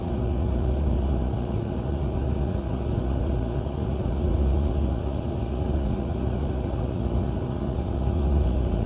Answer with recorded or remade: remade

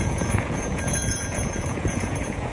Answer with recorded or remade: remade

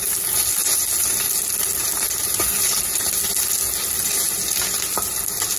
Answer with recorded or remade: recorded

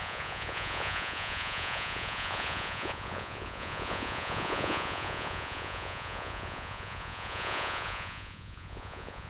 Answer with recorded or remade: remade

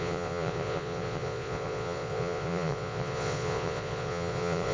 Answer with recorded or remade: remade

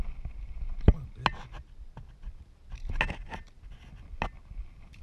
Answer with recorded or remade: recorded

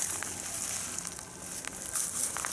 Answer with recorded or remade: recorded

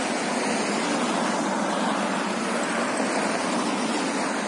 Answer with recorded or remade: recorded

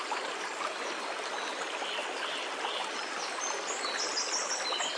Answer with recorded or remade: recorded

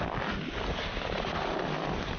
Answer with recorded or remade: recorded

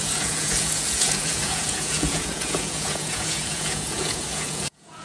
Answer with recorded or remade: remade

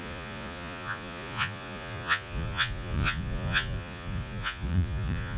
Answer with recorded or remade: remade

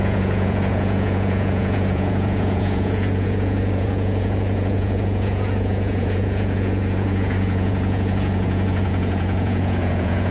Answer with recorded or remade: remade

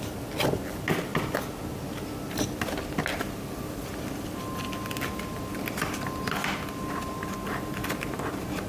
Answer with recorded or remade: recorded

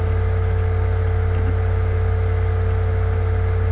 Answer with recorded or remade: recorded